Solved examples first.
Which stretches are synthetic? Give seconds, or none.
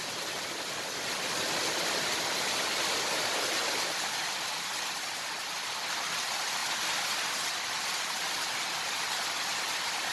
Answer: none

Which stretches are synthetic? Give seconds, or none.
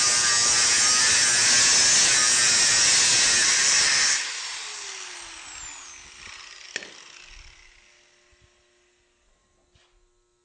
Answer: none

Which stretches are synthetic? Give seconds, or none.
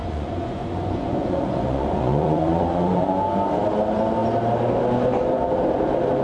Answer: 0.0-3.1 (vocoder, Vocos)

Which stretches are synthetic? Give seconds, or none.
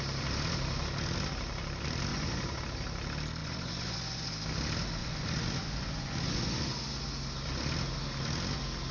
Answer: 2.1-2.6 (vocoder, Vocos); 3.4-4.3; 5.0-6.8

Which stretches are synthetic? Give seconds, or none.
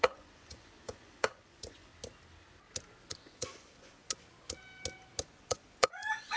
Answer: 0.0-1.9 (vocoder, Vocos); 3.2-4.0; 5.2-6.4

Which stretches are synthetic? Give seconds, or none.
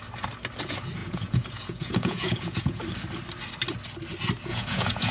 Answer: 1.0-2.8 (vocoder, Vocos); 4.5-5.1